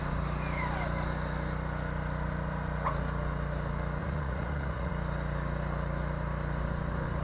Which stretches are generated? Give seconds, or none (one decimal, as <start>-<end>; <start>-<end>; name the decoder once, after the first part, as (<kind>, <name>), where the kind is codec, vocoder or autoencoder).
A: 4.0-4.9 (vocoder, Vocos)